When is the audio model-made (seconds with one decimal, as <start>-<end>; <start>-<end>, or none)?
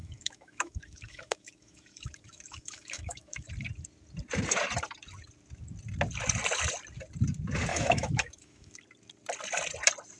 0.0-3.5; 7.7-8.8